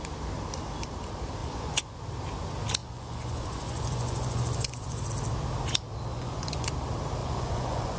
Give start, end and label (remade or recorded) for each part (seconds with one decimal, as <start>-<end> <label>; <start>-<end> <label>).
0.0-1.4 recorded; 1.4-2.0 remade; 2.0-2.8 recorded; 2.8-5.1 remade; 5.1-6.1 recorded; 6.1-6.7 remade; 6.7-7.2 recorded; 7.2-8.0 remade